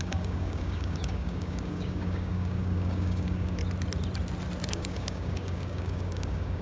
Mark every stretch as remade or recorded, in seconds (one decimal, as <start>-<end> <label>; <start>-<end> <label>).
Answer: 0.0-3.6 remade; 3.6-4.7 recorded; 4.7-6.6 remade